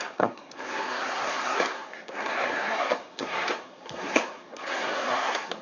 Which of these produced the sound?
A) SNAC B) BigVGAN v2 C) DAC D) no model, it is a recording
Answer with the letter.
A